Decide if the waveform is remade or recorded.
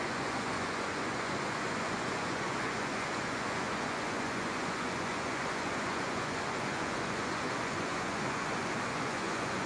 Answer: remade